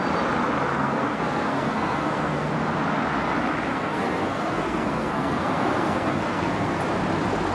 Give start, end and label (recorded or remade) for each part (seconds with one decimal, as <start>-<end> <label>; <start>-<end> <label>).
0.0-0.7 recorded; 0.7-2.5 remade; 2.5-3.7 recorded; 3.7-6.8 remade; 6.8-7.5 recorded